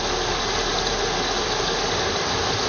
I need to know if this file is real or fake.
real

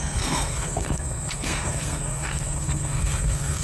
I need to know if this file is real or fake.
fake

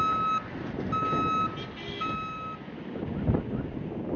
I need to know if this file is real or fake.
real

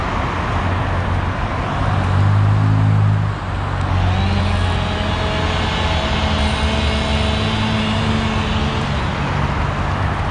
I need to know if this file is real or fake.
real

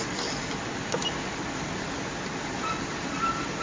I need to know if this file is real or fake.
real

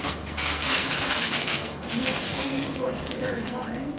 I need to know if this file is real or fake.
fake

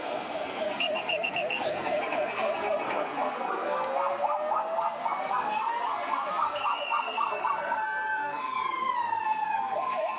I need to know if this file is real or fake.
fake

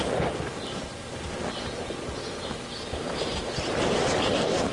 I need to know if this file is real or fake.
real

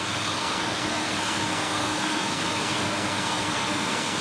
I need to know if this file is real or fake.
fake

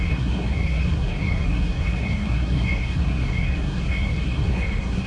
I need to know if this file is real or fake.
fake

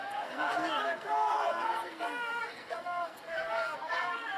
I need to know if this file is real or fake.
fake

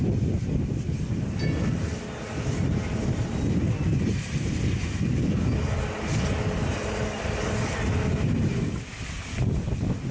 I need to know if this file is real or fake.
real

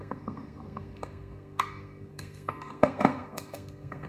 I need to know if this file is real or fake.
fake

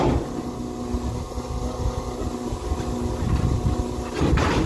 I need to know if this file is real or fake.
real